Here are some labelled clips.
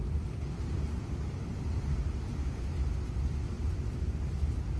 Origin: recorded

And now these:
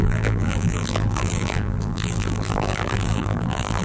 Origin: remade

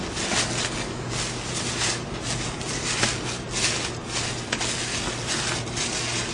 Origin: recorded